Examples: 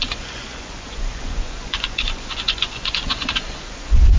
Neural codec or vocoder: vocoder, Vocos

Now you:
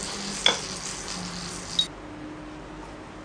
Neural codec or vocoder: none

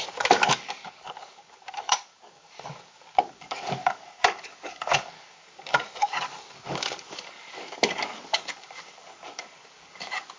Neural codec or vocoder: codec, DAC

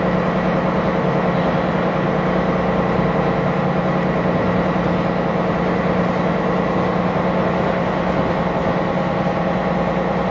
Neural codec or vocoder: none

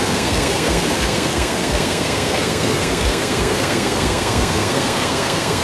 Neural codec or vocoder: codec, SNAC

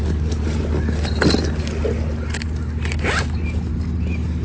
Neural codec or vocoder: none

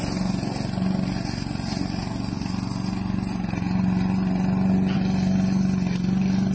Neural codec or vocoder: none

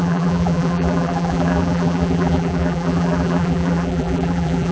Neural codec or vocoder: vocoder, BigVGAN v2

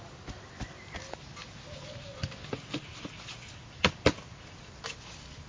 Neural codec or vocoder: none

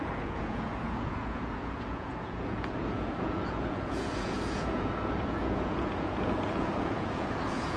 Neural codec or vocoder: vocoder, Vocos